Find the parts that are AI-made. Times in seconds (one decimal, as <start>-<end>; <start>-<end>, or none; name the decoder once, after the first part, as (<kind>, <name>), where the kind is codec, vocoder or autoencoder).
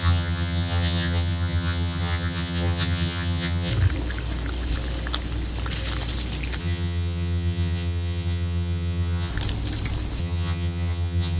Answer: 0.0-3.7 (vocoder, HiFi-GAN); 6.6-9.3; 10.2-11.4